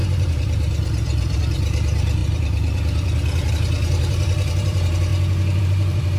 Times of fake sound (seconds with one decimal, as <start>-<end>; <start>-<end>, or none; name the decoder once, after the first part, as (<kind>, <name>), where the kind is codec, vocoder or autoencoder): 0.0-5.1 (vocoder, BigVGAN v2); 5.6-6.2